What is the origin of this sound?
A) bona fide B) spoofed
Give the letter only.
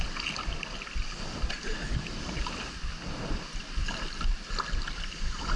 A